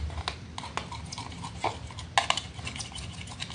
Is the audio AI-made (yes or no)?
no